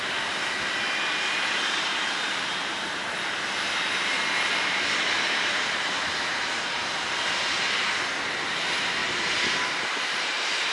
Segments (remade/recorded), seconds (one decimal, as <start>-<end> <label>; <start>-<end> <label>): 0.0-3.0 remade; 3.0-3.7 recorded; 3.7-6.8 remade; 6.8-8.3 recorded; 8.3-9.0 remade; 9.0-9.8 recorded; 9.8-10.7 remade